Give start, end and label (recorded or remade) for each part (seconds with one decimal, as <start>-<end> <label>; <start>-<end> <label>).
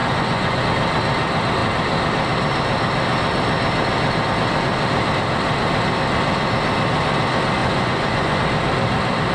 0.0-0.6 remade; 0.6-7.6 recorded; 7.6-8.4 remade; 8.4-9.3 recorded